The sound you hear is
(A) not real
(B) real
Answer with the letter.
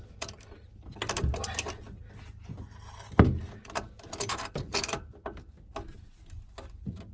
B